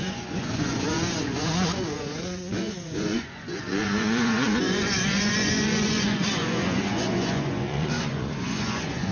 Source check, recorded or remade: remade